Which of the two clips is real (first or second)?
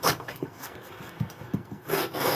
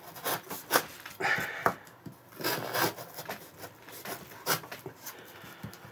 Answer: second